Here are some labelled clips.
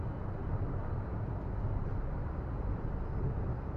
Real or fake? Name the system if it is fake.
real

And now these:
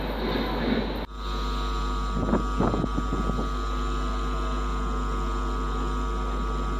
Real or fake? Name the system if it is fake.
real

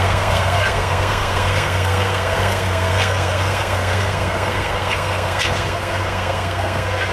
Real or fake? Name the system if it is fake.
fake, codec, SNAC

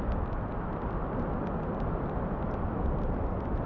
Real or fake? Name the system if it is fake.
real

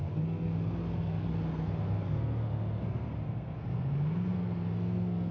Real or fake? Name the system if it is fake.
fake, codec, SNAC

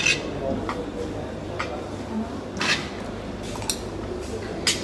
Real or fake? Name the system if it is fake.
real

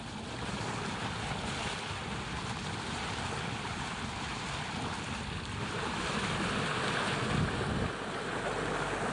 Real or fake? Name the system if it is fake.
real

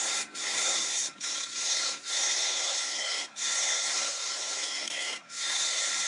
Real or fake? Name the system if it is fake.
fake, codec, SNAC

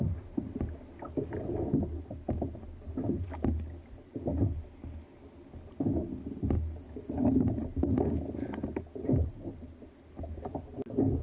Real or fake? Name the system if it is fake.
real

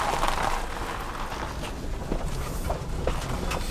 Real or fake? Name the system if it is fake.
real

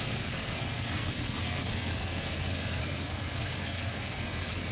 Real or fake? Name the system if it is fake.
fake, codec, SNAC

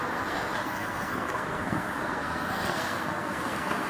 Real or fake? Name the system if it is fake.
fake, codec, SNAC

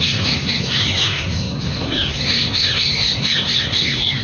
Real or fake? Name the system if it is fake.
fake, codec, SNAC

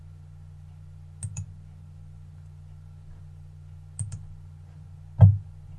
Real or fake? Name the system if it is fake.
real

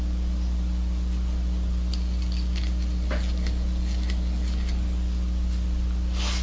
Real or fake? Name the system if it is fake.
real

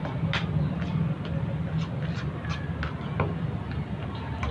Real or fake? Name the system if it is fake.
real